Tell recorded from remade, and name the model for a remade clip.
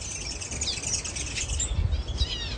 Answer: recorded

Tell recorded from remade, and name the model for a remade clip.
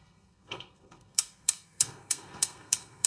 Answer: remade, codec, SNAC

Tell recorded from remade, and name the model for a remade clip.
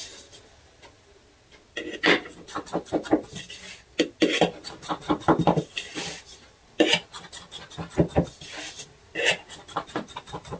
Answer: recorded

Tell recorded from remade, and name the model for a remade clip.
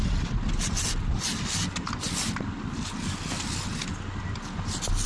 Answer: recorded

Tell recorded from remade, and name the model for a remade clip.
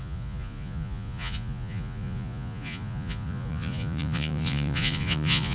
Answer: remade, vocoder, Vocos